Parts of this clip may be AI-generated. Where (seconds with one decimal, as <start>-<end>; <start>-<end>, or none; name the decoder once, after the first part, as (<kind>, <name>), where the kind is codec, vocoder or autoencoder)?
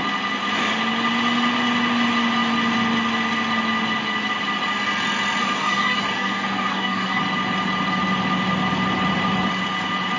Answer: 5.4-7.2 (codec, DAC)